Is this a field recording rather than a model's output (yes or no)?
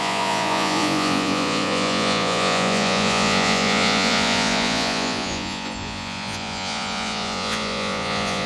no